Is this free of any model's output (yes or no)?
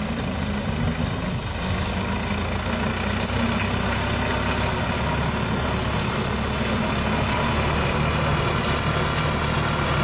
yes